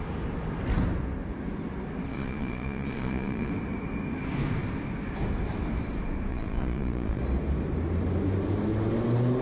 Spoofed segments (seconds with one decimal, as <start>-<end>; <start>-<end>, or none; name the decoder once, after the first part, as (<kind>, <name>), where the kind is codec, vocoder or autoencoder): 2.1-3.5 (vocoder, Vocos); 6.3-7.2